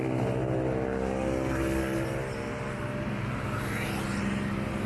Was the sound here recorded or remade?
recorded